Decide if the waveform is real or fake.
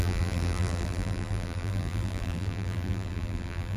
fake